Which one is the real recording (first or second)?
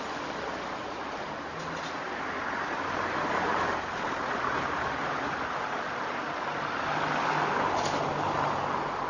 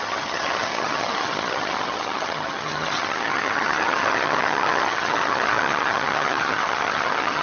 first